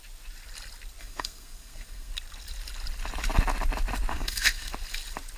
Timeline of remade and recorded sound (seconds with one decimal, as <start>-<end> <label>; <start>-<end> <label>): 0.0-1.0 recorded; 1.0-2.1 remade; 2.1-4.1 recorded; 4.1-4.7 remade; 4.7-5.4 recorded